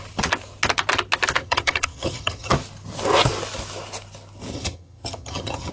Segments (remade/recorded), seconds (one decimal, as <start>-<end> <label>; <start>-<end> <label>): 0.0-1.4 recorded; 1.4-2.5 remade; 2.5-4.5 recorded; 4.5-5.7 remade